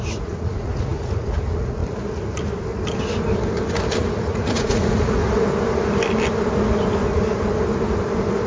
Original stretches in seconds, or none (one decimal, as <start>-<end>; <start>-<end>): 1.8-4.2; 5.2-8.5